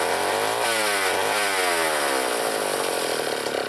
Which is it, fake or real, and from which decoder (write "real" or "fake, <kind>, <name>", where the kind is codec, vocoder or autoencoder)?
real